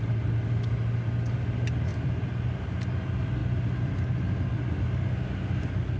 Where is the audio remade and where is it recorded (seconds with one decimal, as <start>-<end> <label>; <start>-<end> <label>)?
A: 0.0-6.0 recorded